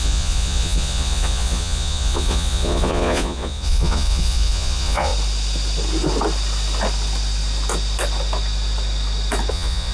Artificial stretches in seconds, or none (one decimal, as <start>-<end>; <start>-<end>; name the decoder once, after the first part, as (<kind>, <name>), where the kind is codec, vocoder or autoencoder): 0.0-5.1 (vocoder, Vocos); 9.5-9.9